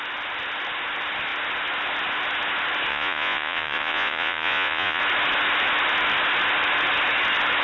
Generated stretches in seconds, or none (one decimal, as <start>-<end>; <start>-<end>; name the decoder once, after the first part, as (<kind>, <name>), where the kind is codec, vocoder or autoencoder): 2.9-5.0 (vocoder, Vocos)